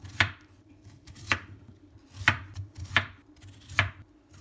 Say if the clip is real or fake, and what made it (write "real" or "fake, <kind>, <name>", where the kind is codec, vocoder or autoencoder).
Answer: fake, vocoder, BigVGAN v2